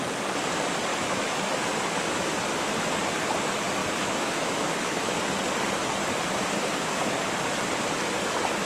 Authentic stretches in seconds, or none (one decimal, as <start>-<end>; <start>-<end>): 0.0-0.9; 1.5-3.8; 5.1-8.7